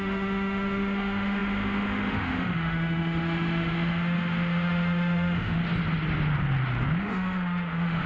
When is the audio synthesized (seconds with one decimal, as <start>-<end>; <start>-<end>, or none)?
0.0-5.6; 7.0-8.1